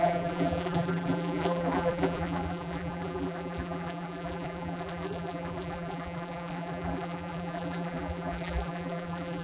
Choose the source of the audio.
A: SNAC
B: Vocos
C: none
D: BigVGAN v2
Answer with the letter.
D